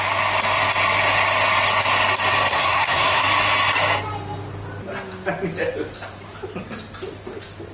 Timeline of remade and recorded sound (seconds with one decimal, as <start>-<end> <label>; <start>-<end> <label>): 0.0-2.5 recorded; 2.5-3.2 remade; 3.2-7.7 recorded